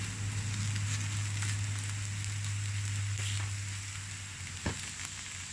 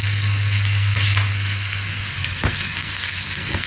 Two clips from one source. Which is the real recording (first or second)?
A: first